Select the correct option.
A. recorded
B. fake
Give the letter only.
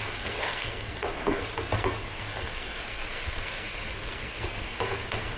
B